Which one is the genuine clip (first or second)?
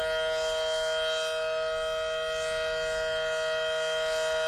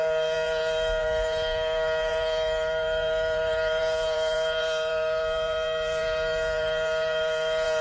first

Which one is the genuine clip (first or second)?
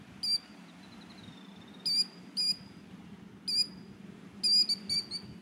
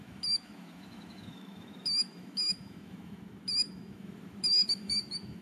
first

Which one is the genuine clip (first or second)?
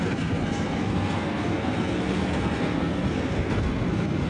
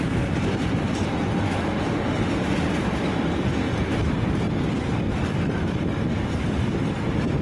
second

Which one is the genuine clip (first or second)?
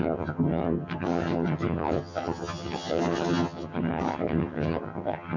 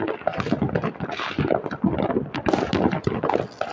second